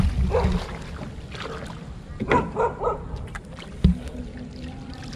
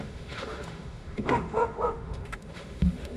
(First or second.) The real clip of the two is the first